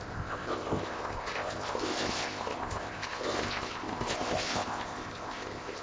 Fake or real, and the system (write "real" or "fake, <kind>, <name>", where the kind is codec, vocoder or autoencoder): fake, codec, ZipCodec